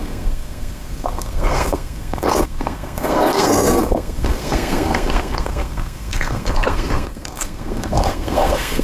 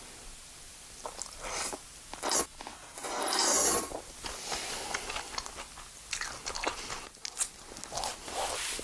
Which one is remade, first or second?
first